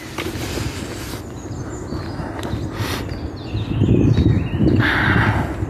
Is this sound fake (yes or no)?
no